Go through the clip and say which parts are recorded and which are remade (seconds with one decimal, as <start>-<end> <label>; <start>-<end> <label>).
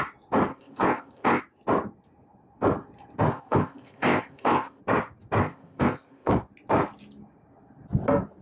0.0-0.5 recorded; 0.5-1.4 remade; 1.4-3.3 recorded; 3.3-4.8 remade; 4.8-5.4 recorded; 5.4-6.3 remade; 6.3-8.4 recorded